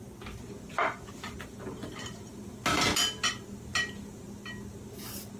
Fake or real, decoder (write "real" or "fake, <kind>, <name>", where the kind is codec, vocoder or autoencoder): real